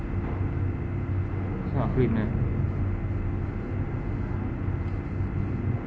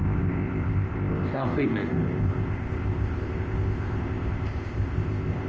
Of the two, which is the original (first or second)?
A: first